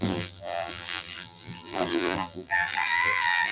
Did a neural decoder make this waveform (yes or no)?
yes